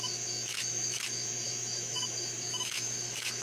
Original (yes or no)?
no